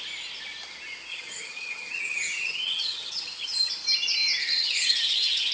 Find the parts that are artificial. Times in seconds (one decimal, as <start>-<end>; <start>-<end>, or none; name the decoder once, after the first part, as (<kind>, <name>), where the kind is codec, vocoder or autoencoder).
1.1-3.7 (vocoder, HiFi-GAN); 4.4-5.5